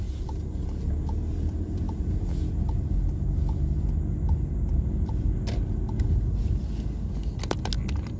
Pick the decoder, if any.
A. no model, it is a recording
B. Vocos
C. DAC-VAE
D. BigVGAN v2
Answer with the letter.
A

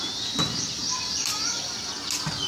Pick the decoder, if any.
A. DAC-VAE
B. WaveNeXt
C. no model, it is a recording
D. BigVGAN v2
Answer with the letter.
C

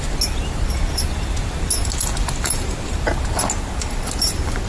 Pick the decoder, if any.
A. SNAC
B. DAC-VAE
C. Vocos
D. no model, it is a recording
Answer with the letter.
D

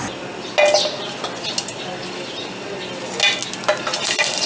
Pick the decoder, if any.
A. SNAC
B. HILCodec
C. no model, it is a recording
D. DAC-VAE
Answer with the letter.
C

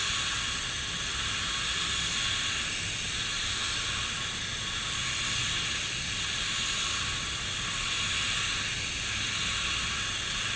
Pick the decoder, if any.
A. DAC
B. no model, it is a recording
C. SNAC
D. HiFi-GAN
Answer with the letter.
B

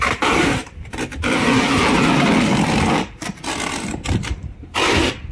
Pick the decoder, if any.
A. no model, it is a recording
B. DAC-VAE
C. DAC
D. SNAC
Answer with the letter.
A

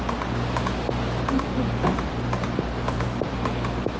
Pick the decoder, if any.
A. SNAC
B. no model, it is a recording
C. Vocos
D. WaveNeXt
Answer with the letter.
B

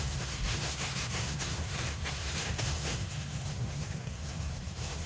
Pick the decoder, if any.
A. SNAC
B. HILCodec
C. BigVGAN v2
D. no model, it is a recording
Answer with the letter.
A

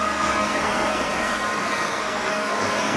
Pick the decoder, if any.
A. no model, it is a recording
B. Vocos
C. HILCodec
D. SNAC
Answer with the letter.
D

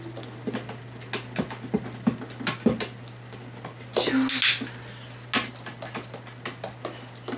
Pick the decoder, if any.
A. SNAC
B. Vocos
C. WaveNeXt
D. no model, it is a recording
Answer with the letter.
D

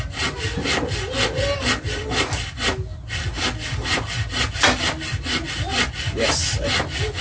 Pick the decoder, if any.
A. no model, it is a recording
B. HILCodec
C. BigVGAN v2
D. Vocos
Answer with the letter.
A